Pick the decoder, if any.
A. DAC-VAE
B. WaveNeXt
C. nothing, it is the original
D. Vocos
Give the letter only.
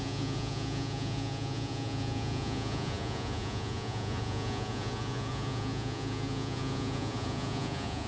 D